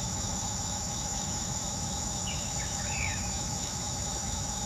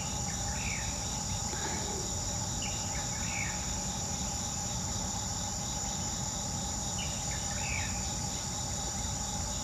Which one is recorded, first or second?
second